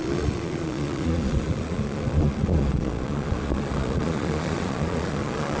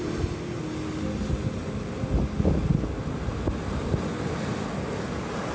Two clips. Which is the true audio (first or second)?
second